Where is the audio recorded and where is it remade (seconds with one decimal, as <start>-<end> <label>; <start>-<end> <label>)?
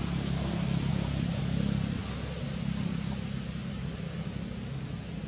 0.0-0.9 recorded; 0.9-1.4 remade; 1.4-5.3 recorded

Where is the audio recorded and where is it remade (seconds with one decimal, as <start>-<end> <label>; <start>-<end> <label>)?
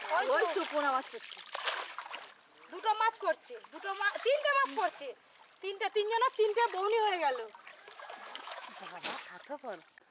0.0-2.8 recorded; 2.8-5.0 remade; 5.0-7.7 recorded; 7.7-9.4 remade; 9.4-10.1 recorded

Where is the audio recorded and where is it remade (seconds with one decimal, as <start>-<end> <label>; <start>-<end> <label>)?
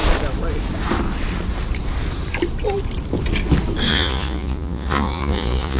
0.0-3.9 recorded; 3.9-5.8 remade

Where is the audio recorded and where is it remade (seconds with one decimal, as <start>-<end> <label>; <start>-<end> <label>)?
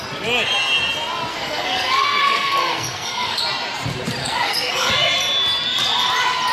0.0-1.3 recorded; 1.3-3.4 remade; 3.4-4.2 recorded; 4.2-4.9 remade; 4.9-6.5 recorded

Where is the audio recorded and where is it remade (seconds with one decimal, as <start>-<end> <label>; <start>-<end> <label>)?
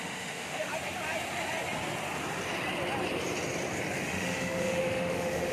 0.0-0.7 remade; 0.7-4.0 recorded; 4.0-5.5 remade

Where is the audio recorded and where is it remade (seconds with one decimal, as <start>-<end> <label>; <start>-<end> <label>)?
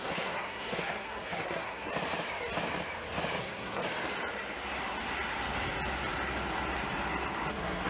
0.0-1.9 remade; 1.9-3.4 recorded; 3.4-3.8 remade; 3.8-7.5 recorded; 7.5-7.9 remade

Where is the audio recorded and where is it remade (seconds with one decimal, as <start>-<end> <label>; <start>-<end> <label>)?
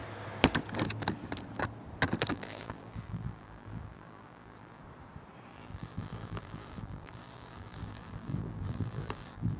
0.0-2.3 recorded; 2.3-4.8 remade; 4.8-5.5 recorded; 5.5-9.6 remade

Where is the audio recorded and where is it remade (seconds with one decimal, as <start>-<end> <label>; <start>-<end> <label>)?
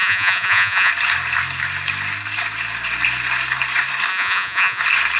0.0-0.9 remade; 0.9-4.1 recorded; 4.1-4.8 remade; 4.8-5.2 recorded